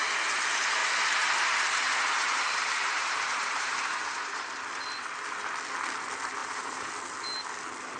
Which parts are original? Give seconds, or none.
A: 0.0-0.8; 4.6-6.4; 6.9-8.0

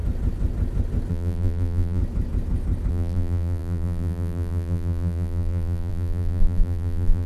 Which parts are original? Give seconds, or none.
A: 0.0-1.1; 2.0-2.9

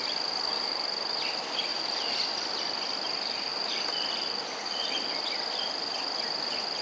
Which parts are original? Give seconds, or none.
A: 0.0-6.8

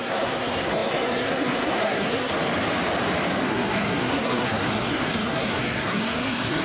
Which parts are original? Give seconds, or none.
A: 2.3-3.4